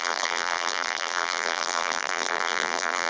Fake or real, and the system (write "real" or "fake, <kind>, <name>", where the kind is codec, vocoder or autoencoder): fake, vocoder, BigVGAN v2